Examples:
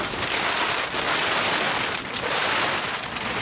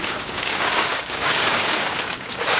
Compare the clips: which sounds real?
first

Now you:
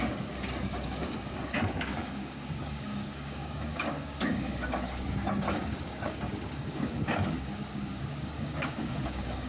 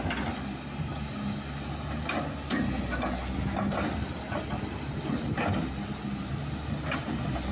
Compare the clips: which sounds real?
second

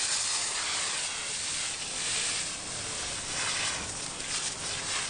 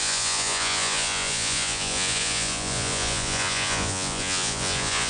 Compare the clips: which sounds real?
first